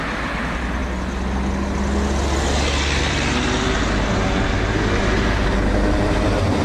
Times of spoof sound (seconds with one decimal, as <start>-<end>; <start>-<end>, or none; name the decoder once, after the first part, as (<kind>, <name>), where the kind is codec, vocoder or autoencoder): none